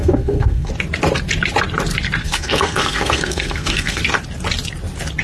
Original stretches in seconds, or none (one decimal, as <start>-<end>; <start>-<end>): 0.7-2.2; 4.0-5.2